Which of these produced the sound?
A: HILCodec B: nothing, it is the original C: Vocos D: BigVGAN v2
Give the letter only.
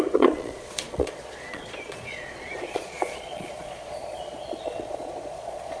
C